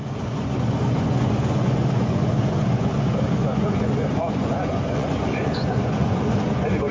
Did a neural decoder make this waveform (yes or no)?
yes